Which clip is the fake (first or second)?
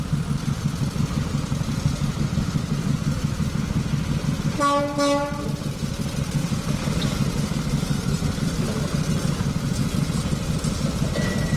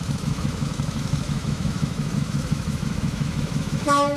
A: second